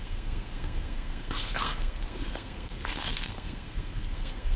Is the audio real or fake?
fake